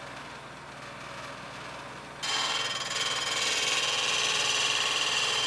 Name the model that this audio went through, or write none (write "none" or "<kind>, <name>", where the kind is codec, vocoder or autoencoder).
none